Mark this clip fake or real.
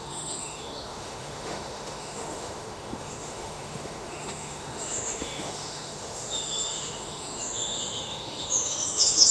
fake